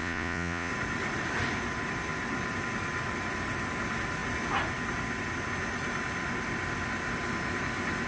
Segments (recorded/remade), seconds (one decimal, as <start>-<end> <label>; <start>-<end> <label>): 0.0-0.7 remade; 0.7-8.1 recorded